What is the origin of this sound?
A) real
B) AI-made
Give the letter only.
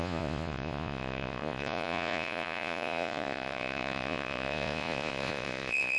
B